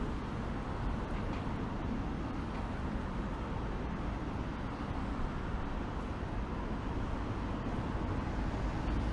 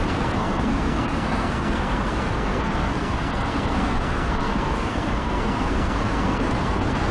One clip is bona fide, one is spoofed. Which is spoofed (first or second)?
second